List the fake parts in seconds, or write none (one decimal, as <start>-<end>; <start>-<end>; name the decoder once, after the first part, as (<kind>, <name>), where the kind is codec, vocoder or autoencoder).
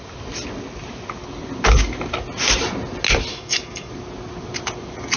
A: 3.3-3.9 (codec, DAC)